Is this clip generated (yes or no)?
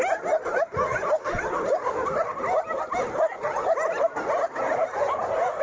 no